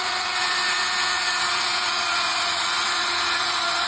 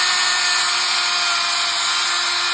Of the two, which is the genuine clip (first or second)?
second